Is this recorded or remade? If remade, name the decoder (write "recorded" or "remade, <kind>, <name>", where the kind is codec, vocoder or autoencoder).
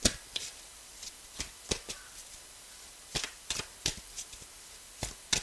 recorded